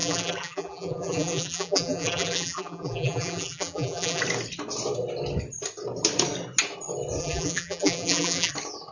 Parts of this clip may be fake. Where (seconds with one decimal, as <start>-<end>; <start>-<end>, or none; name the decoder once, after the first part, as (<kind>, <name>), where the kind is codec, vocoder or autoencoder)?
0.0-4.2 (vocoder, BigVGAN v2); 7.2-8.5